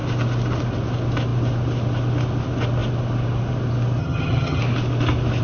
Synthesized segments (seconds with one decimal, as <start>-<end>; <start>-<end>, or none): 4.0-4.6